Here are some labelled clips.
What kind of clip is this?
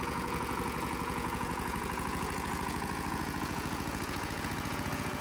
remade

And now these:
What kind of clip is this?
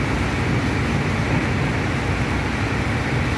recorded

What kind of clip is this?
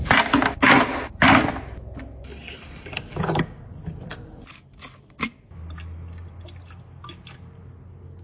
recorded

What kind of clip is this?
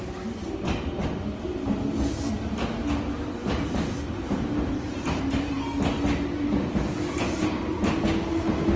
recorded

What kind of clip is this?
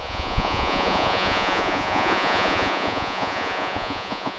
remade